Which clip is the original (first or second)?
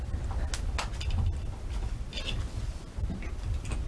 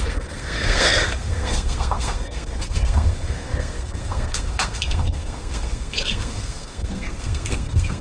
first